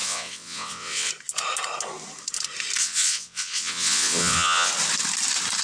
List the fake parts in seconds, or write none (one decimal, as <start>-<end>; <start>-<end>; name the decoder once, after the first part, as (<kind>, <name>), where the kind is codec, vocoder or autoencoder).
0.0-1.1 (vocoder, WaveNeXt); 2.8-4.7